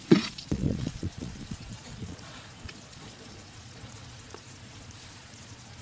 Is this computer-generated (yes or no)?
yes